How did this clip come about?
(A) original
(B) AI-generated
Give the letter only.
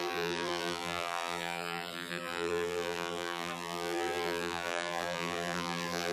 B